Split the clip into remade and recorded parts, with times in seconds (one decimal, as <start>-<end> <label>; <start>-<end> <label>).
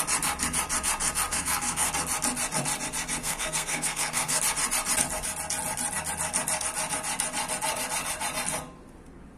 0.0-1.3 recorded; 1.3-1.9 remade; 1.9-3.2 recorded; 3.2-4.4 remade; 4.4-9.4 recorded